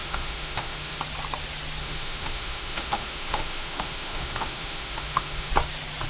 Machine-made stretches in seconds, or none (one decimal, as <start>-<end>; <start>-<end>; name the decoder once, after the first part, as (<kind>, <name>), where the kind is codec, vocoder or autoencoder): 0.0-1.0 (autoencoder, DAC-VAE); 1.8-5.5